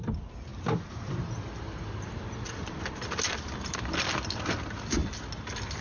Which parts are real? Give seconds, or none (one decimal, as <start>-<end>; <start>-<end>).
0.0-5.8